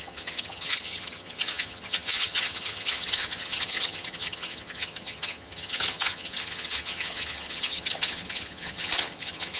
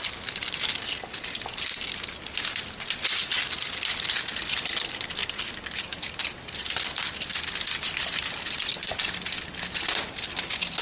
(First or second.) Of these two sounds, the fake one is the first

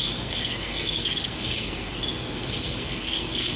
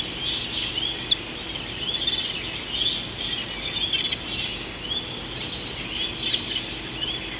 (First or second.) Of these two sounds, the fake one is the first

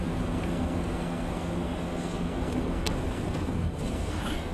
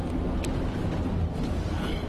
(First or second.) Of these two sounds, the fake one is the first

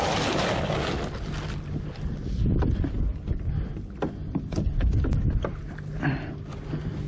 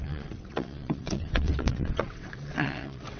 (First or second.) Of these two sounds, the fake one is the second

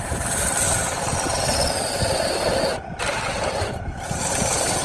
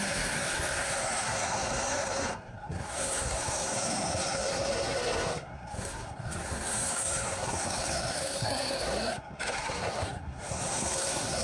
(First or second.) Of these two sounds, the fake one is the second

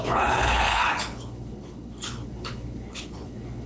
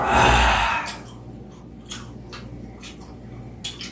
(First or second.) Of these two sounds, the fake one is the first